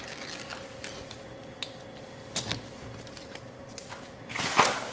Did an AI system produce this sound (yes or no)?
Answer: no